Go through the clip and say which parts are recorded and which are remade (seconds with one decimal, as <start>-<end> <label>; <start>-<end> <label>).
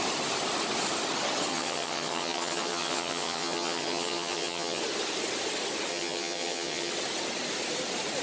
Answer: 0.0-1.5 recorded; 1.5-4.8 remade; 4.8-5.9 recorded; 5.9-6.9 remade; 6.9-8.2 recorded